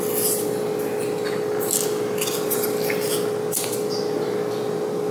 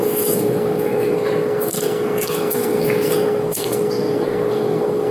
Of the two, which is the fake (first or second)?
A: second